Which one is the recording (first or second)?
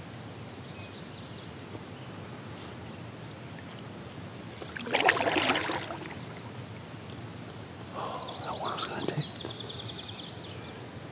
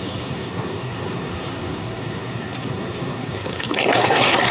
first